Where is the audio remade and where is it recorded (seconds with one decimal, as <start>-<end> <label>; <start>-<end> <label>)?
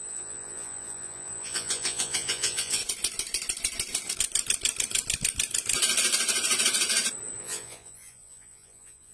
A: 0.0-2.8 remade; 2.8-7.4 recorded; 7.4-9.1 remade